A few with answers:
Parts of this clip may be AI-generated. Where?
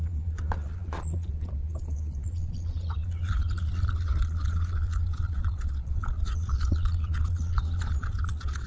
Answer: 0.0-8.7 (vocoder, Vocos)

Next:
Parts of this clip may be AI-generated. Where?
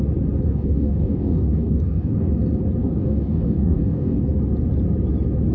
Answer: 0.5-2.3 (codec, DAC); 2.8-4.2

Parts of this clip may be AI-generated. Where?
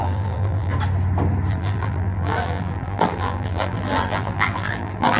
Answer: 0.0-0.7 (vocoder, BigVGAN v2); 1.5-5.2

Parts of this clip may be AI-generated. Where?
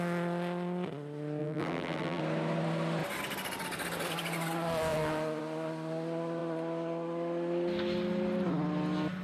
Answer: 1.4-2.2 (vocoder, BigVGAN v2)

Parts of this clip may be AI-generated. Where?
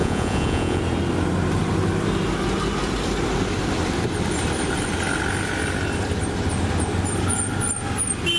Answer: 0.0-0.8 (vocoder, Vocos)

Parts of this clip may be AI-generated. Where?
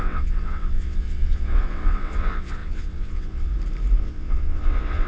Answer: 0.0-3.5 (vocoder, WaveNeXt); 4.0-5.1